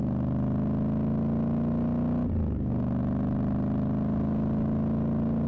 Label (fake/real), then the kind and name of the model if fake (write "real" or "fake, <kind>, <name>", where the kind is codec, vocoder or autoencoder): real